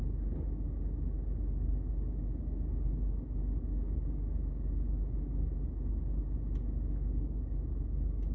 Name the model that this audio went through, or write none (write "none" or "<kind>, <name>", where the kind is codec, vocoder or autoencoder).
none